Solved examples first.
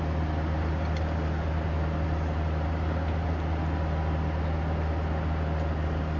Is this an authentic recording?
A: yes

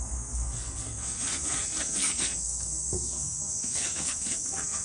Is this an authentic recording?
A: no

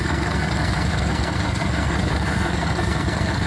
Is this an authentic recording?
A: no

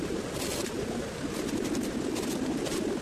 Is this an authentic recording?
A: yes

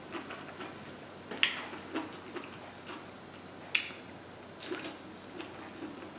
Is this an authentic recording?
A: yes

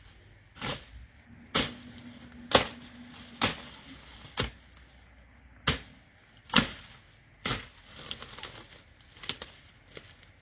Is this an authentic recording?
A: yes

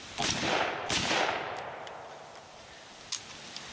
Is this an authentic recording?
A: yes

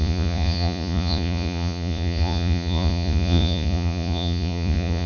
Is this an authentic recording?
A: no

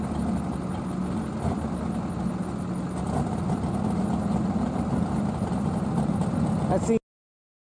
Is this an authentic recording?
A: yes